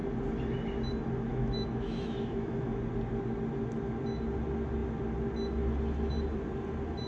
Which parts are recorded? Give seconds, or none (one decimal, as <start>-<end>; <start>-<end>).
0.0-1.3; 2.8-7.1